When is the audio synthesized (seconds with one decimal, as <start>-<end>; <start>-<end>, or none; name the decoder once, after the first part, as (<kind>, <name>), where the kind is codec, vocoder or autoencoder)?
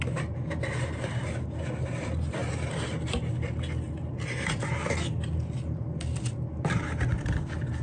none